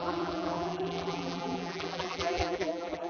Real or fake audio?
fake